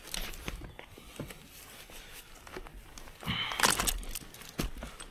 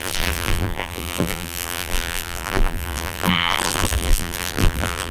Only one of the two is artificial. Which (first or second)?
second